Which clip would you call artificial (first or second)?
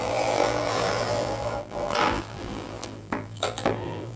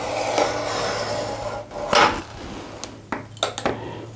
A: first